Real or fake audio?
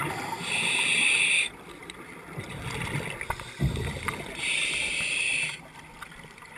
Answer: real